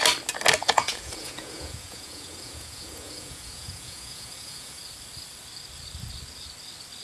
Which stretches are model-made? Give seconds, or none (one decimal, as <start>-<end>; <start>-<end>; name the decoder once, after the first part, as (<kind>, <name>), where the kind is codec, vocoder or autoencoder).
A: 0.6-4.8 (vocoder, Vocos)